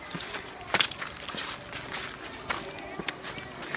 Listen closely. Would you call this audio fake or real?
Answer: real